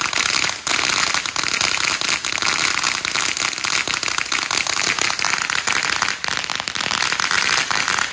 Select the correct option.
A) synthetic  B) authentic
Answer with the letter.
B